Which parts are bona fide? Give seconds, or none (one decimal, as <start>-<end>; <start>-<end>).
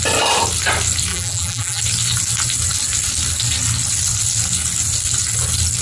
0.0-1.1; 1.8-5.8